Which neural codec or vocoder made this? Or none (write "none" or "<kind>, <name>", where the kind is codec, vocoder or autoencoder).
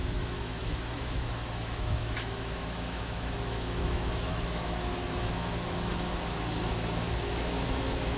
autoencoder, DAC-VAE